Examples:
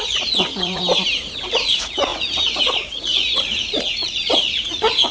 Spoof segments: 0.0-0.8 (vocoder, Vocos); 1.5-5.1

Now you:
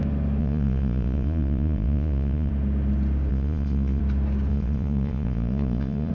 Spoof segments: 0.4-2.5 (vocoder, Vocos); 3.3-4.0; 4.5-6.1

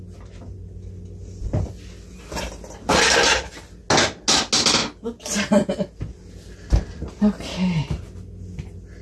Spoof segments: none

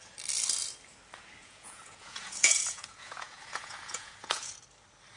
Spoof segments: 1.4-4.5 (vocoder, Vocos)

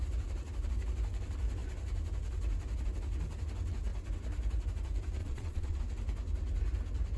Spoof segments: 5.2-5.8 (vocoder, Vocos)

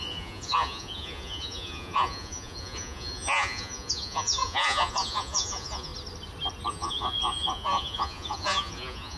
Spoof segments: 0.0-5.9 (vocoder, Vocos); 6.7-9.2

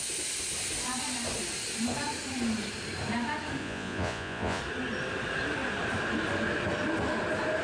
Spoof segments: 3.6-4.6 (vocoder, Vocos)